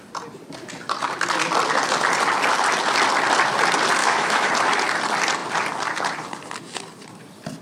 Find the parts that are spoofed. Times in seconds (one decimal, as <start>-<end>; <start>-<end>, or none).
4.0-4.5